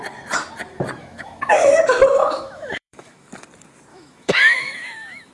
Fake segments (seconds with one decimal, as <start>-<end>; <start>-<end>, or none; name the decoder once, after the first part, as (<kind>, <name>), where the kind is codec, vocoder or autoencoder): 1.0-1.8 (autoencoder, DAC-VAE); 2.2-3.3; 3.9-5.3